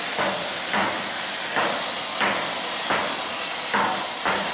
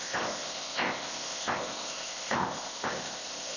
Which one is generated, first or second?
second